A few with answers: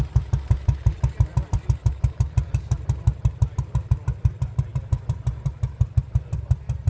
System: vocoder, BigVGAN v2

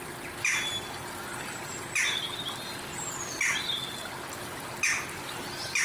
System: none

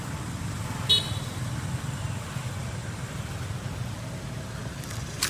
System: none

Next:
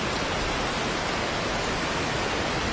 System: none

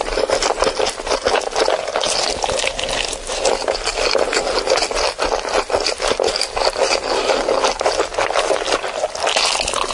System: none